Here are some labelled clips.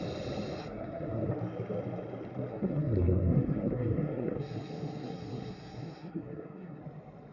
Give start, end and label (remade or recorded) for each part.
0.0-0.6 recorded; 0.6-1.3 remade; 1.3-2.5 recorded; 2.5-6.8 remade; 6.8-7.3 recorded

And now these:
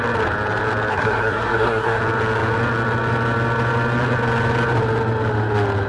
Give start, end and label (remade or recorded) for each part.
0.0-0.9 recorded; 0.9-2.0 remade; 2.0-5.9 recorded

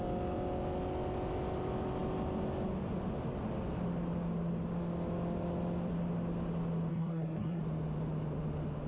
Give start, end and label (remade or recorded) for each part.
0.0-6.9 recorded; 6.9-7.6 remade; 7.6-8.9 recorded

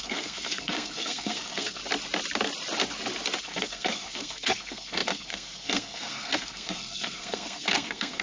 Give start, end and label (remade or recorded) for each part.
0.0-1.8 remade; 1.8-3.4 recorded; 3.4-8.2 remade

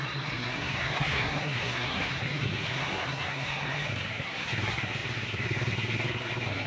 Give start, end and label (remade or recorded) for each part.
0.0-6.7 remade

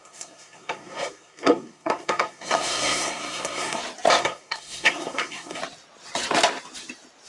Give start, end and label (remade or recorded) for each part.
0.0-3.8 remade; 3.8-4.2 recorded; 4.2-5.6 remade; 5.6-7.3 recorded

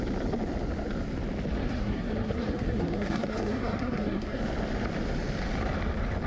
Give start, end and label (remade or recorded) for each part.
0.0-1.6 recorded; 1.6-4.4 remade; 4.4-6.3 recorded